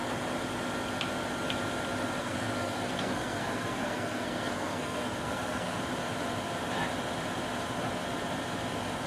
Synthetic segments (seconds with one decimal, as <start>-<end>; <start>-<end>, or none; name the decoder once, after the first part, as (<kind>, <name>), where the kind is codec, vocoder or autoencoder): 2.2-5.8 (codec, SNAC)